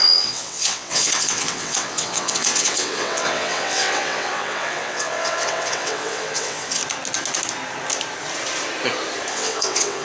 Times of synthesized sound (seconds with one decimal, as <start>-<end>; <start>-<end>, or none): 0.0-6.8; 9.3-10.0